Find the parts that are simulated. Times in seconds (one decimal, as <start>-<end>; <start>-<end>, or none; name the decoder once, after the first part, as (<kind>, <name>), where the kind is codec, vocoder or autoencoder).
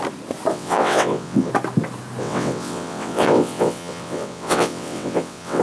0.5-1.5 (vocoder, WaveNeXt); 2.2-5.6